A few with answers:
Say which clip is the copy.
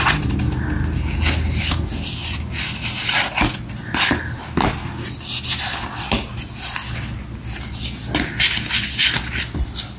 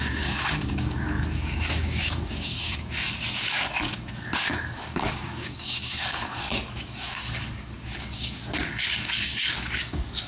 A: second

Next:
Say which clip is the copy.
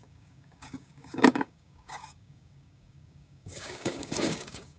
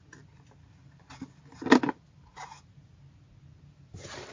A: first